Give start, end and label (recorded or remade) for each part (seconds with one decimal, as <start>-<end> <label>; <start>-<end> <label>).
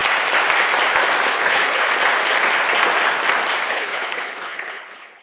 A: 0.0-1.3 recorded; 1.3-1.9 remade; 1.9-3.7 recorded; 3.7-5.2 remade